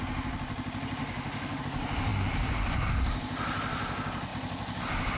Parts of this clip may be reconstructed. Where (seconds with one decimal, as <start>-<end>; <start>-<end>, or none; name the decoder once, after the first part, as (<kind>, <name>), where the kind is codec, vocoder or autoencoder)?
1.0-1.6 (autoencoder, DAC-VAE)